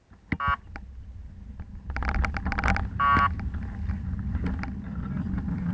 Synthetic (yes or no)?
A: no